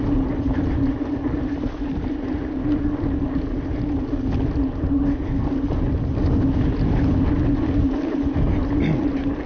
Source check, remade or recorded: recorded